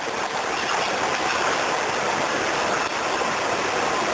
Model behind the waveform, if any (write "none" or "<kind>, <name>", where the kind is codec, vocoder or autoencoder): none